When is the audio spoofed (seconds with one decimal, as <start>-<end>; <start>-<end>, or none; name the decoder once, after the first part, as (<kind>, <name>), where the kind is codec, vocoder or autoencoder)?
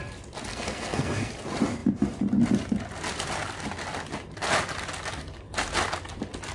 0.5-1.3 (codec, SNAC)